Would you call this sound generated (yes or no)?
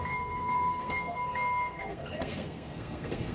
yes